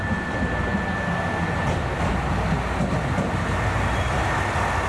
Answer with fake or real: real